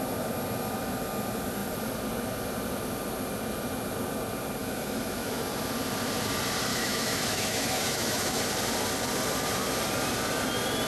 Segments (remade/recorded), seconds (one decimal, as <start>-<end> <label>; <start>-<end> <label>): 0.0-4.6 recorded; 4.6-5.4 remade; 5.4-6.7 recorded; 6.7-8.4 remade; 8.4-10.9 recorded